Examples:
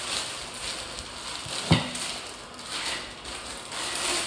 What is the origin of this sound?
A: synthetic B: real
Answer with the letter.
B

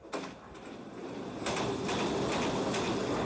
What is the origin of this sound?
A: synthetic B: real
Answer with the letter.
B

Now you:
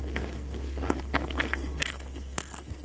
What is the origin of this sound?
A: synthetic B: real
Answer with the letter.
A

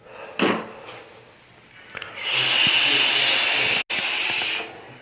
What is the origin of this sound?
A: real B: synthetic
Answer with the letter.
A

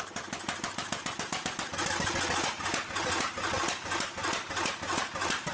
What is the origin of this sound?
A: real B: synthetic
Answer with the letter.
A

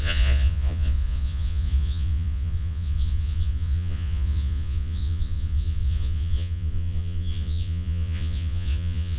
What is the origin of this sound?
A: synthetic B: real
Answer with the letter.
A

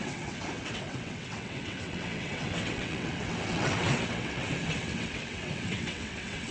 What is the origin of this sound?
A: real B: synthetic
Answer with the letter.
B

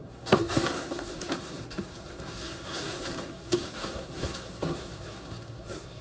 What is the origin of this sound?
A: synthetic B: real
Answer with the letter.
A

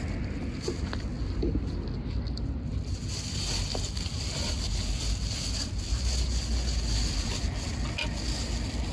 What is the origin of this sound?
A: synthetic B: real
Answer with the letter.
B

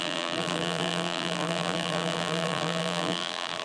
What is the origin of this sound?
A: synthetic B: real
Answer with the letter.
A